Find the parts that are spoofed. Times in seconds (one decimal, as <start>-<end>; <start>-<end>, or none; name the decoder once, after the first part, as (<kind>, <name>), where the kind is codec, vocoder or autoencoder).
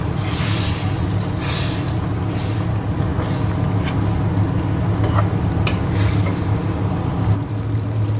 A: none